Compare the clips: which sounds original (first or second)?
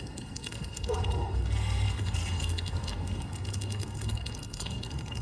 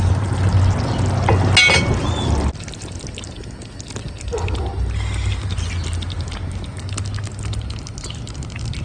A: second